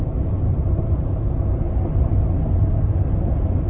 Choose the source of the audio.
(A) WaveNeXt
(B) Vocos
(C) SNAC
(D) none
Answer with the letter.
D